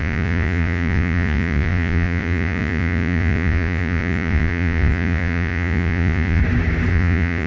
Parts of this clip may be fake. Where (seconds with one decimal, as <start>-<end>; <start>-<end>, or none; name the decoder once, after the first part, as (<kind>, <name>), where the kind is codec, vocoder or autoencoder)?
0.0-6.4 (vocoder, Vocos); 6.9-7.5